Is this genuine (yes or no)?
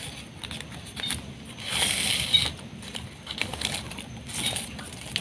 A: yes